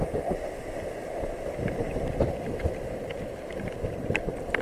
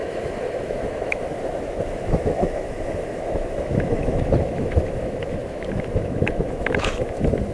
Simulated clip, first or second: second